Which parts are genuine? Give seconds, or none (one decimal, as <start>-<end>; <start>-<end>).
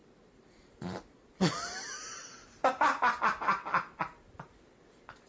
0.0-5.3